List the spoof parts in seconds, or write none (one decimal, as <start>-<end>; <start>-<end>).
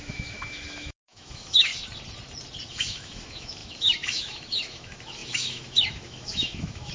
0.0-1.7; 2.7-6.9